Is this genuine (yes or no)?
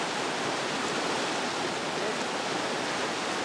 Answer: yes